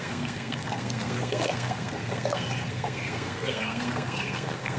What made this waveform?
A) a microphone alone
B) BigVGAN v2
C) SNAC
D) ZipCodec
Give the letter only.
C